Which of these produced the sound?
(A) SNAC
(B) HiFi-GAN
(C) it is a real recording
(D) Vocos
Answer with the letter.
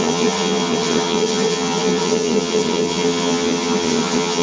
B